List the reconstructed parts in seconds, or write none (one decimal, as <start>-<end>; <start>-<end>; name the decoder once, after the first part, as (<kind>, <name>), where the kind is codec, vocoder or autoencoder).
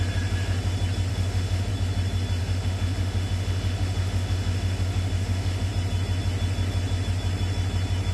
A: 1.1-1.7 (autoencoder, DAC-VAE); 2.4-5.7